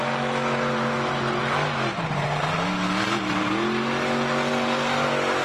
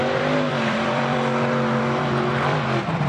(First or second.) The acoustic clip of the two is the first